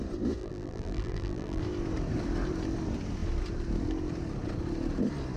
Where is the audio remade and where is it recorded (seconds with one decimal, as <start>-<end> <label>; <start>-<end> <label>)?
0.0-0.4 recorded; 0.4-1.6 remade; 1.6-5.4 recorded